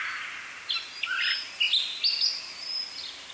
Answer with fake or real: real